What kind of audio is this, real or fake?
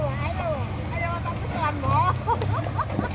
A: real